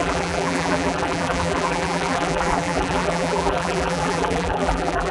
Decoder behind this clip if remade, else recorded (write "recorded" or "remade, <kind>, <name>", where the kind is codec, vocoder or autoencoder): remade, vocoder, BigVGAN v2